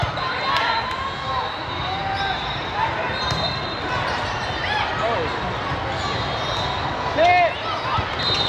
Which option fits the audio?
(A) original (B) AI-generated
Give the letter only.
A